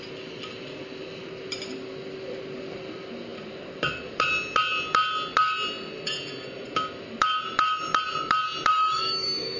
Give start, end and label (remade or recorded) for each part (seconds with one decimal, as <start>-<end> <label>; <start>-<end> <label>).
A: 0.0-8.7 recorded; 8.7-9.6 remade